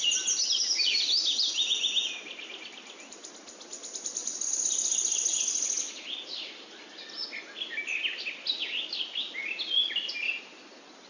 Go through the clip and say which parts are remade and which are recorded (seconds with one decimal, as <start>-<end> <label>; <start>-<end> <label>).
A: 0.0-11.1 recorded